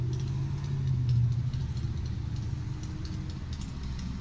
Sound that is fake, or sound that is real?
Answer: real